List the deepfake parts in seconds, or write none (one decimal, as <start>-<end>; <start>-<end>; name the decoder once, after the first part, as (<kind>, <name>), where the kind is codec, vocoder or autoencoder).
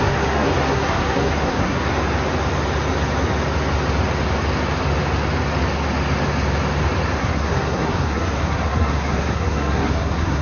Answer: 0.0-1.9 (codec, SNAC); 7.2-10.4